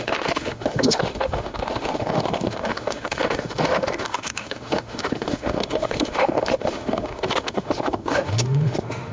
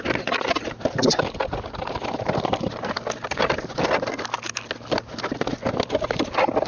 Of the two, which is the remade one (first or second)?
first